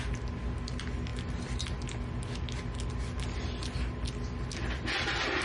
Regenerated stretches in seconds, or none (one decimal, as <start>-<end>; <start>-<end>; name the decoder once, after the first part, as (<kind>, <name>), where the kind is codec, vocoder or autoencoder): none